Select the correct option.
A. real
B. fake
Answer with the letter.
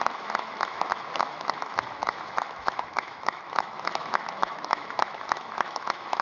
B